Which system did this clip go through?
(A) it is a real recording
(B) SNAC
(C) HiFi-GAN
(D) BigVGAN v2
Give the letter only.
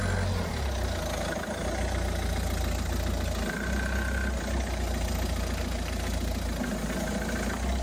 A